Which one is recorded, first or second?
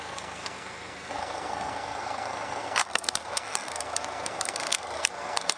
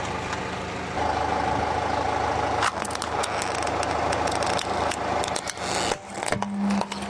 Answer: second